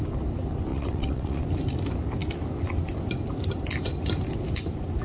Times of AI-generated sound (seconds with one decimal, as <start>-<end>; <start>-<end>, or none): 0.7-1.4